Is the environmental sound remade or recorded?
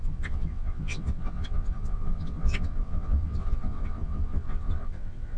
remade